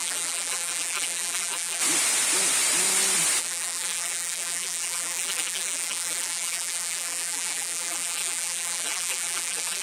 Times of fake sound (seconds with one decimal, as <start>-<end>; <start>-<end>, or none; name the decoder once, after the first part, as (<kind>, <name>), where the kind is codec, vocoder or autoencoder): 0.0-1.8 (vocoder, BigVGAN v2); 3.4-9.8

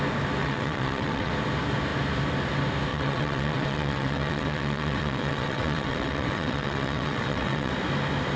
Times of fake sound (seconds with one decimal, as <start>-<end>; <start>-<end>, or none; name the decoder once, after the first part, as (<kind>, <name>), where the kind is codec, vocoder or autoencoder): 0.4-1.3 (vocoder, WaveNeXt); 2.9-7.7

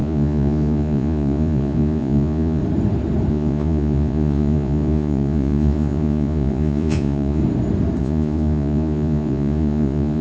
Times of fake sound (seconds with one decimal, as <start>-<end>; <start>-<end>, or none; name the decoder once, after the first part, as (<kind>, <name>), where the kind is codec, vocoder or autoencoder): 0.0-2.6 (vocoder, Vocos); 3.3-7.4; 8.0-10.2

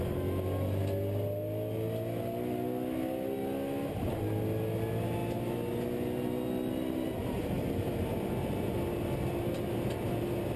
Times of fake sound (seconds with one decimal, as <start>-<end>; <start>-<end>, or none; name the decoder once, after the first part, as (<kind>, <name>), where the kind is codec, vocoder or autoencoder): none

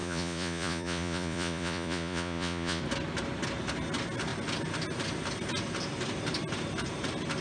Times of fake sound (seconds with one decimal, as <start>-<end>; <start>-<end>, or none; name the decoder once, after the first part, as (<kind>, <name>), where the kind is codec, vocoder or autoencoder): 0.0-2.8 (vocoder, Vocos)

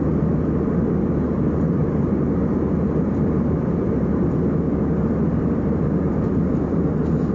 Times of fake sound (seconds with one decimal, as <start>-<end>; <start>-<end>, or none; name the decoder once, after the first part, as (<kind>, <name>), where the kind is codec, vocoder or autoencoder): 0.0-7.3 (vocoder, BigVGAN v2)

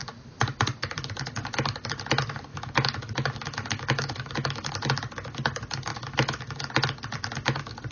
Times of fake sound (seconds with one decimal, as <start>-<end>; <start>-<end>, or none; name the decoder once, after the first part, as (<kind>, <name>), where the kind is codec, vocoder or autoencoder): 2.5-4.7 (autoencoder, DAC-VAE); 5.9-6.7

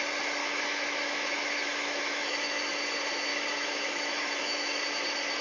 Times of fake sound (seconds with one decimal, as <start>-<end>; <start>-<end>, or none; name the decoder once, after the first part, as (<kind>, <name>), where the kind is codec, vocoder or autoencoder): 0.4-2.6 (autoencoder, DAC-VAE); 3.3-4.8